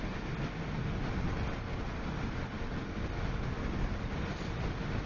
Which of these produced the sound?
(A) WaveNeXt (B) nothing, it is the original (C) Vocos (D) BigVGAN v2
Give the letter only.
B